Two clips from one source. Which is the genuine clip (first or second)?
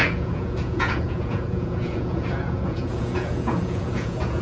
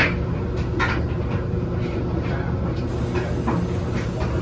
second